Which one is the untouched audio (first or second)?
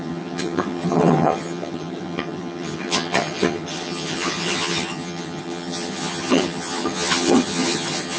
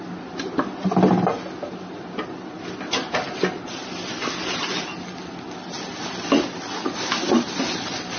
second